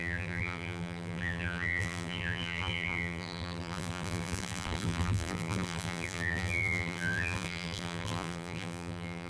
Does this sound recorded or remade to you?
remade